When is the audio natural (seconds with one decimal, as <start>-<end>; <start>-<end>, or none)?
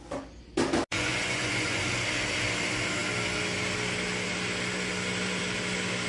0.0-0.9; 1.8-6.1